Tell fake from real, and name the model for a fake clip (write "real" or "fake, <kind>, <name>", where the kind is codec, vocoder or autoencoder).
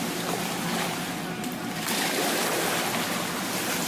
real